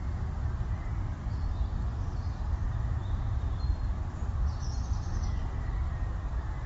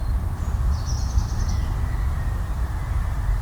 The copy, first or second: first